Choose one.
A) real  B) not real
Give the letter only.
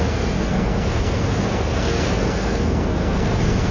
B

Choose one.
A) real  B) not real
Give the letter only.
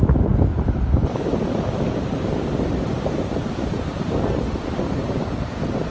B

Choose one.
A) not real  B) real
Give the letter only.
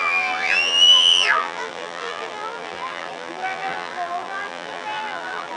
A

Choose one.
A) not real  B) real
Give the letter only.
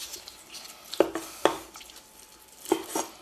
B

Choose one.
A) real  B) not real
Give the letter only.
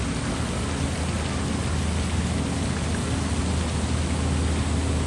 A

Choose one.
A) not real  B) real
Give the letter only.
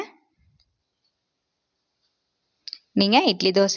B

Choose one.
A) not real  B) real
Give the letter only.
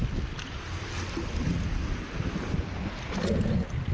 B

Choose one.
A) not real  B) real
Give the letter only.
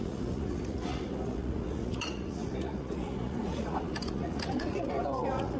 A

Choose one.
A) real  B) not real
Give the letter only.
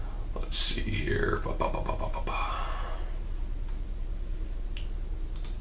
A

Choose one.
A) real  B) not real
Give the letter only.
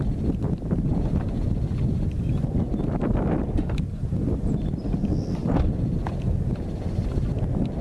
A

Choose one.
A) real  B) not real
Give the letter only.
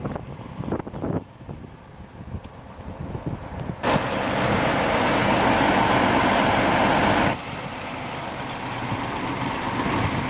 A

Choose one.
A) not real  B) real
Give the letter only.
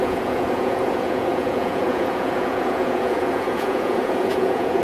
A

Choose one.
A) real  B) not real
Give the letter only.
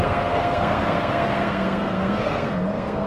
B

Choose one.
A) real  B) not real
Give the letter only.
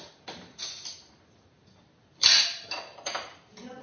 A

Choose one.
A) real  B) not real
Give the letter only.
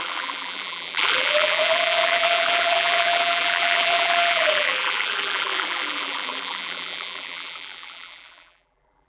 B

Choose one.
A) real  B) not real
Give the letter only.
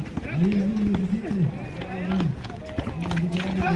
A